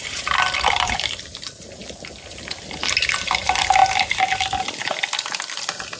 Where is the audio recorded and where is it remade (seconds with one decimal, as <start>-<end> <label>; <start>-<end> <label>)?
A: 0.0-1.8 remade; 1.8-2.3 recorded; 2.3-2.8 remade; 2.8-3.4 recorded; 3.4-3.8 remade; 3.8-6.0 recorded